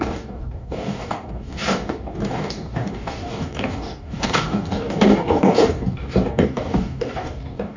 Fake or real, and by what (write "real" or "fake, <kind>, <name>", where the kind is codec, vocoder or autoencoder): fake, codec, DAC